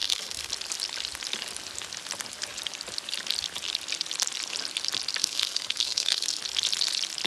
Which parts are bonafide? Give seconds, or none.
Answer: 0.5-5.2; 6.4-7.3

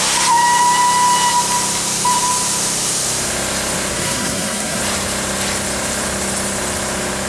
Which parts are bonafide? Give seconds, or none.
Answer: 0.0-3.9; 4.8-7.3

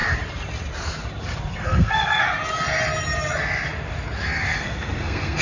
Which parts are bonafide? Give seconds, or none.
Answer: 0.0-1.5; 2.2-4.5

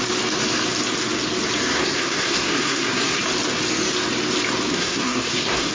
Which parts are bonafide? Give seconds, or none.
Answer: 0.0-1.7; 3.2-4.7